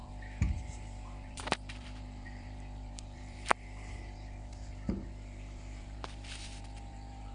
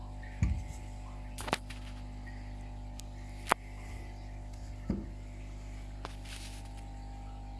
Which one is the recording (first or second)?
second